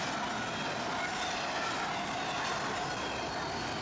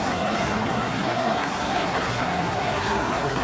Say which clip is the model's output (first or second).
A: second